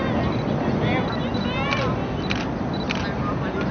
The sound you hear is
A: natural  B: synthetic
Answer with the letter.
A